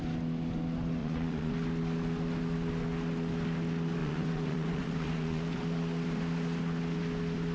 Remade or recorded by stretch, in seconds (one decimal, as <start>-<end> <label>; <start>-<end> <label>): 0.0-1.0 recorded; 1.0-1.5 remade; 1.5-4.0 recorded; 4.0-5.4 remade; 5.4-7.5 recorded